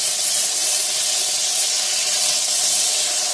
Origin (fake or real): fake